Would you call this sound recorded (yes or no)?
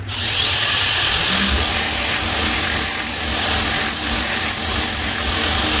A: yes